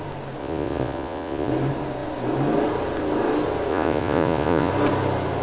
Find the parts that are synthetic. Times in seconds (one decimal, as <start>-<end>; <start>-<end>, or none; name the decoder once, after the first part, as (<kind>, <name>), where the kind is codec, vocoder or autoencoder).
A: 0.4-1.5 (vocoder, Vocos); 3.7-4.7